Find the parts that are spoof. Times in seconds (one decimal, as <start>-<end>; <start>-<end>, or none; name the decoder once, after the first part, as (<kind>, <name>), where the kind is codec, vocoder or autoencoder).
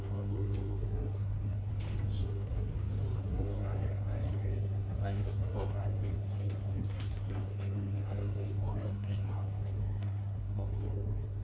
0.0-1.7 (codec, SNAC); 2.2-2.7; 3.2-11.4